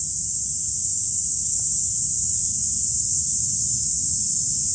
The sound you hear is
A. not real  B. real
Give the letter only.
B